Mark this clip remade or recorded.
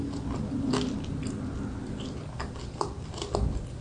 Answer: recorded